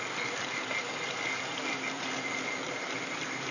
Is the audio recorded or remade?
recorded